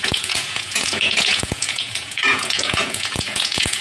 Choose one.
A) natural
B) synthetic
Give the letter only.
B